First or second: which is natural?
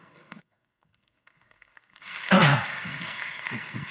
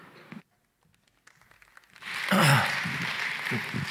second